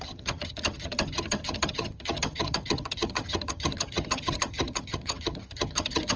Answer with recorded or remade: remade